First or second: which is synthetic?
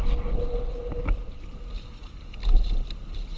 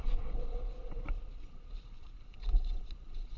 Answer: second